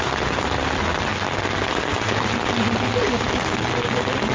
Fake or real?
real